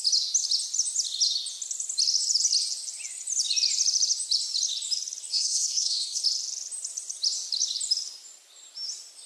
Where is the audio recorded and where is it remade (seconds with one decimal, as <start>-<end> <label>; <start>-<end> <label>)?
0.0-5.3 recorded; 5.3-6.2 remade; 6.2-9.3 recorded